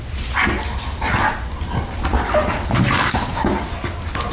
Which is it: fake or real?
real